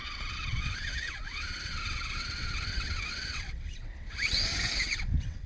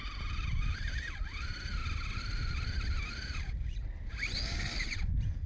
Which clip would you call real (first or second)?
second